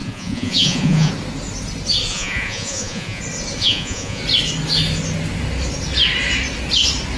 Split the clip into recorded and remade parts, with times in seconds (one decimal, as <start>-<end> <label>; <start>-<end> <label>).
0.0-1.1 remade; 1.1-2.1 recorded; 2.1-3.2 remade; 3.2-3.6 recorded; 3.6-4.2 remade; 4.2-7.2 recorded